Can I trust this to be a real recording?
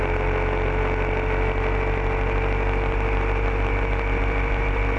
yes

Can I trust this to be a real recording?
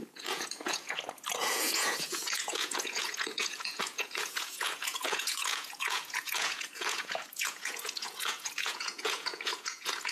no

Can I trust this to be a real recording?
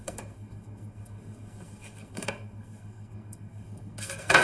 no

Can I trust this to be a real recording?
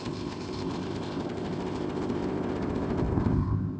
no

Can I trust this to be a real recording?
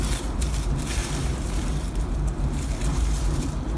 no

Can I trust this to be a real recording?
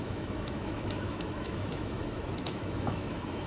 no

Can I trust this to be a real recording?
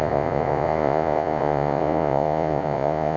no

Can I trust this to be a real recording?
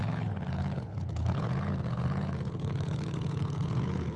no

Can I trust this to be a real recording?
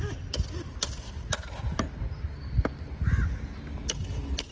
yes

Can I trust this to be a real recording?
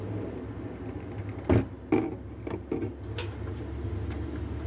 yes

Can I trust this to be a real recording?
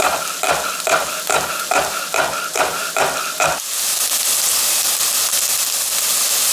yes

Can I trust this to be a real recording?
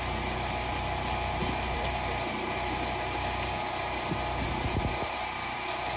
yes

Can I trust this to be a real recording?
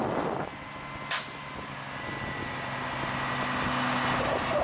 yes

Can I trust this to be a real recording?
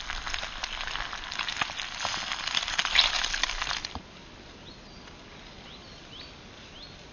yes